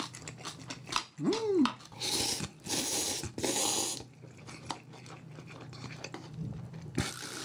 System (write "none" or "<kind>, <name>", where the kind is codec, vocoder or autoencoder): vocoder, BigVGAN v2